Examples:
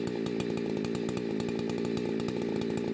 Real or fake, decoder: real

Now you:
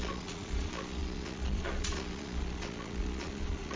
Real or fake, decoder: fake, vocoder, Vocos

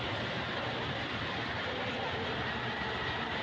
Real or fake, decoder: real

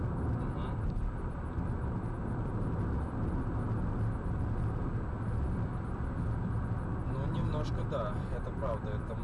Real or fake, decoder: real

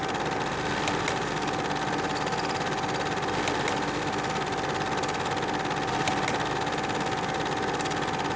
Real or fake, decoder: real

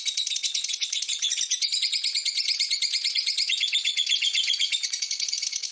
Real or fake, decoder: fake, vocoder, Vocos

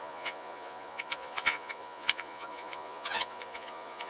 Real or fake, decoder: fake, vocoder, Vocos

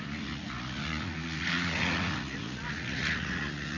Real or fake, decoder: fake, vocoder, Vocos